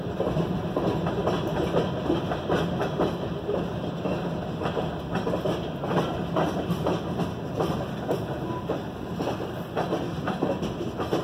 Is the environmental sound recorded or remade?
recorded